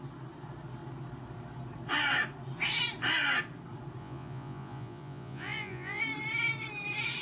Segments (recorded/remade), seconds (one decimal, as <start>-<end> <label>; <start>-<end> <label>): 0.0-4.0 recorded; 4.0-6.0 remade; 6.0-7.2 recorded